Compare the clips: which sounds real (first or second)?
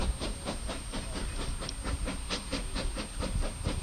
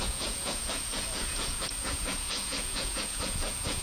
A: first